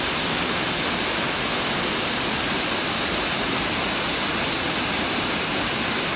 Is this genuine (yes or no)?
yes